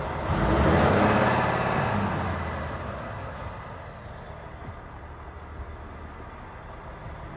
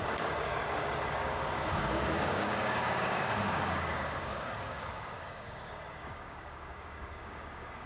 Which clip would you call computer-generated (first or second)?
second